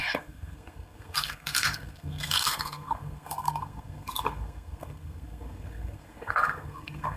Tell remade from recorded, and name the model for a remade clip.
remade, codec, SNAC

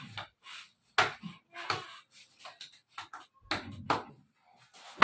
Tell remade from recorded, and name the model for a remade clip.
recorded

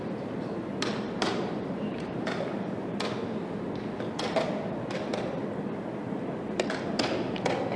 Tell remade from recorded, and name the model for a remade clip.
remade, vocoder, BigVGAN v2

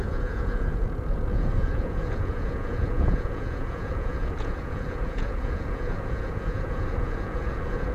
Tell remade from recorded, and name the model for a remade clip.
remade, vocoder, Vocos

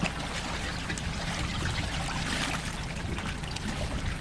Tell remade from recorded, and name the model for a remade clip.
recorded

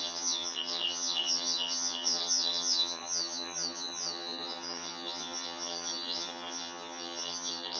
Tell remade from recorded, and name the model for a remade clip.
remade, vocoder, HiFi-GAN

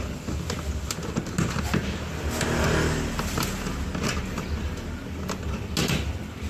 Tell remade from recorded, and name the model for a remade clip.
recorded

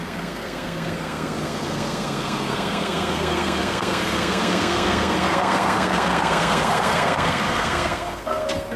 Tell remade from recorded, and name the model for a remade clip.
remade, codec, SNAC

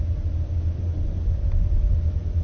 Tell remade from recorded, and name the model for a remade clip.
recorded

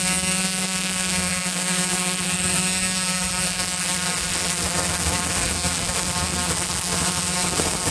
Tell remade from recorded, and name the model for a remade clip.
remade, codec, SNAC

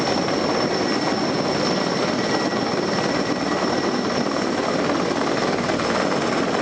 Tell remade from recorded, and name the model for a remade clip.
recorded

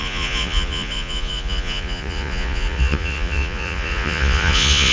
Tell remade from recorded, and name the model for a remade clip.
remade, vocoder, Vocos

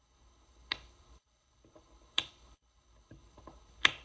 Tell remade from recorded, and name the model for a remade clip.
remade, codec, HILCodec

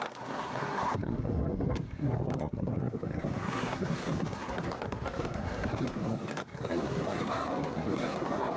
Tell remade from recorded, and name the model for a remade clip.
remade, codec, SNAC